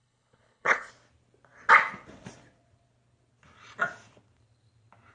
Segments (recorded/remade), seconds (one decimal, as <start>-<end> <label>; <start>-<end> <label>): 0.0-0.9 remade; 0.9-5.1 recorded